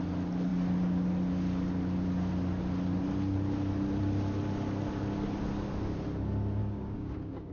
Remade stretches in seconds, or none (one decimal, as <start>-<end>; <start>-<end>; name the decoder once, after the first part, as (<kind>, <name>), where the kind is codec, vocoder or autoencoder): 6.6-7.5 (codec, DAC)